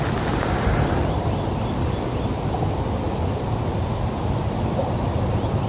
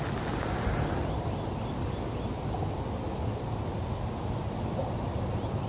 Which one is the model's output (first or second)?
first